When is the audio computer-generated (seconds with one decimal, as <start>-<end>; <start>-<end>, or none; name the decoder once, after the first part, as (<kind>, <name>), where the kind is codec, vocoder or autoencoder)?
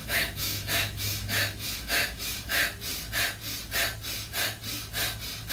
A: 0.0-2.6 (autoencoder, DAC-VAE)